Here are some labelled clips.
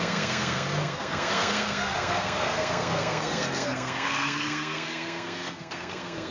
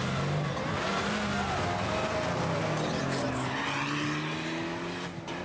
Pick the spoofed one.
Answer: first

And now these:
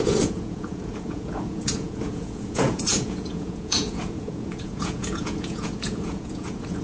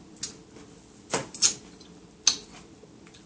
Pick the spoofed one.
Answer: first